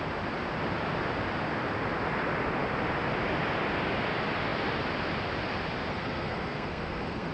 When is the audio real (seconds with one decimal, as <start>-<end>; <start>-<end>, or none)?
0.0-5.9